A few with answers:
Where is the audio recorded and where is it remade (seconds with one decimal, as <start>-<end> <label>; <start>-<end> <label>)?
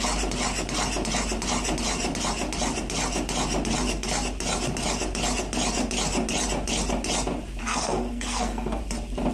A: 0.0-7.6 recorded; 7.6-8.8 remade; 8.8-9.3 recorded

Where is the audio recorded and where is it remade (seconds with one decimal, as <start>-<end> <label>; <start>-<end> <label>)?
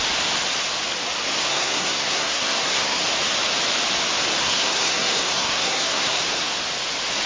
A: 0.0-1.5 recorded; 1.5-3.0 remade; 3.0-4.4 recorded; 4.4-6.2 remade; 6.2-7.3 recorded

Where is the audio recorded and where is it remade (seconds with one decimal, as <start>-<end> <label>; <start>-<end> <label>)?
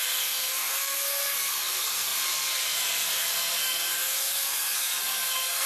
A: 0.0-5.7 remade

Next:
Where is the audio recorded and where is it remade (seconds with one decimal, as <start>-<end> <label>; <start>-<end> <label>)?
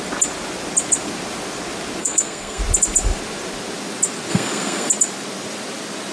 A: 0.0-2.0 recorded; 2.0-2.6 remade; 2.6-4.3 recorded; 4.3-4.9 remade; 4.9-6.1 recorded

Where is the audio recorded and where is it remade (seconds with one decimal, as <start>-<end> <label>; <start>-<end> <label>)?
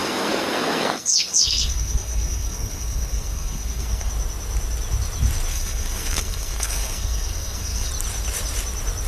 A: 0.0-4.1 remade; 4.1-5.5 recorded; 5.5-7.9 remade; 7.9-9.1 recorded